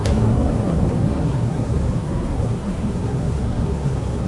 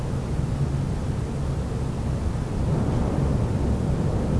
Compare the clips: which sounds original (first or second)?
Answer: second